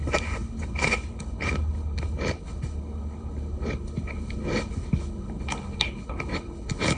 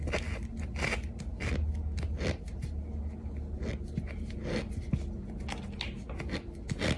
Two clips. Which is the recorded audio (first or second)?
second